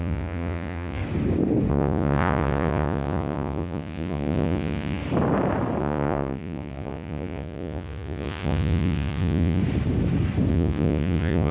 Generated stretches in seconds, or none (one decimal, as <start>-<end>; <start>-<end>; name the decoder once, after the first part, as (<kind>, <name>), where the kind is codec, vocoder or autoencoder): 0.0-1.0 (vocoder, Vocos); 1.7-5.0; 5.8-9.6; 10.5-11.5